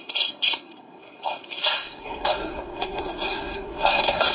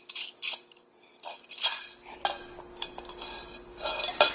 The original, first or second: second